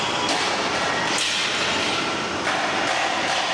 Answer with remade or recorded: recorded